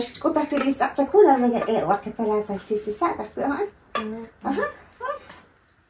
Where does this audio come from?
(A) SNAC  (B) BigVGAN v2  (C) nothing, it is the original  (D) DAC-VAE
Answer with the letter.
C